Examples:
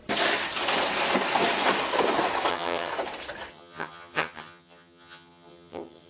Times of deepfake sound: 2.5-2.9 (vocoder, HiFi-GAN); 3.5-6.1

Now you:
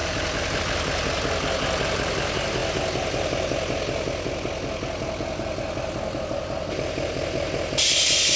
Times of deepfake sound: none

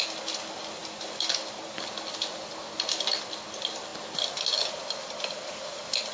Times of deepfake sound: none

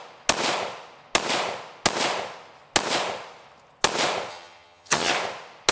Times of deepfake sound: 4.3-5.1 (vocoder, HiFi-GAN)

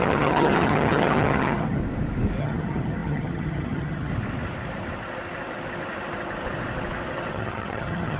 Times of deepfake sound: 0.0-1.8 (vocoder, HiFi-GAN); 2.4-4.1; 7.3-8.2

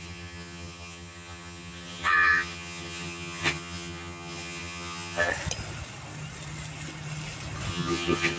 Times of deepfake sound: 0.0-5.3 (vocoder, HiFi-GAN); 7.7-8.4